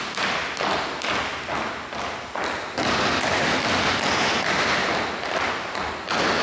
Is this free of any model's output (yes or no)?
yes